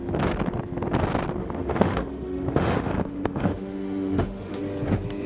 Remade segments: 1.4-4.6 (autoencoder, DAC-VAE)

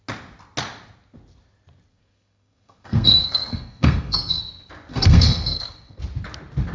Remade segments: 1.9-4.4 (codec, SNAC); 4.9-6.0

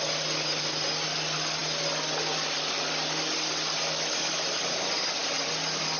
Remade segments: none

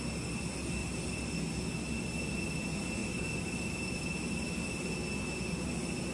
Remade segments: 0.8-1.3 (vocoder, BigVGAN v2); 3.0-4.9

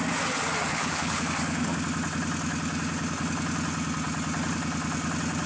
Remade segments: 0.7-1.2 (codec, HILCodec)